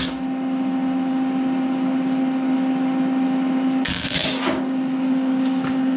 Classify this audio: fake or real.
real